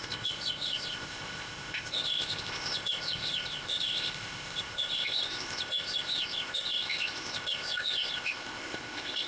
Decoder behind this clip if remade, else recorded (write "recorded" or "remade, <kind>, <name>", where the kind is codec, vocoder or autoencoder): remade, codec, ZipCodec